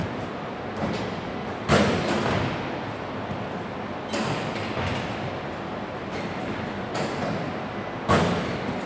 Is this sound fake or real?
real